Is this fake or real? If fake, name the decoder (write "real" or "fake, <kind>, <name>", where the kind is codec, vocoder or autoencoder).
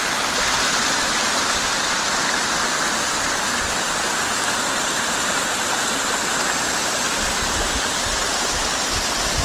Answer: real